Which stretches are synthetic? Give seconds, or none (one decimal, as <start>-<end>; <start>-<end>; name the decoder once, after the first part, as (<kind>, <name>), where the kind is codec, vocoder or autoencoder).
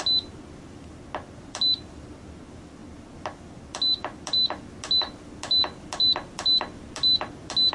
none